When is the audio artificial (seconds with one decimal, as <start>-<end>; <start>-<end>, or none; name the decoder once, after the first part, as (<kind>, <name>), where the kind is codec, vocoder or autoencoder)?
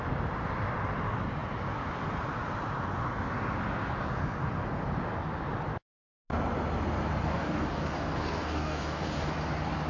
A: 7.2-9.3 (codec, DAC)